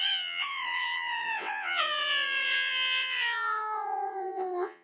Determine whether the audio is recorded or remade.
remade